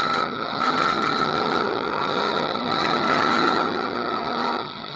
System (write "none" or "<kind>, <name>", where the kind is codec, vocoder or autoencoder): vocoder, HiFi-GAN